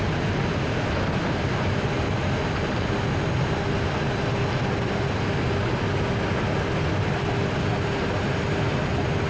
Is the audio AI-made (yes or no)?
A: no